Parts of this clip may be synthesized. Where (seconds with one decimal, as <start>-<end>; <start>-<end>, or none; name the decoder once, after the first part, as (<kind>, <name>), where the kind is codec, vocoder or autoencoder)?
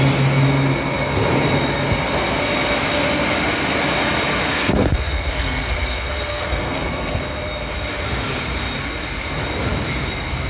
4.4-7.2 (codec, SNAC)